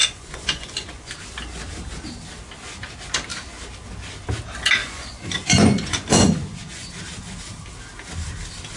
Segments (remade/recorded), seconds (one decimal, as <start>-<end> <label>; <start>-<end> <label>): 0.0-1.1 remade; 1.1-4.8 recorded; 4.8-6.9 remade; 6.9-8.8 recorded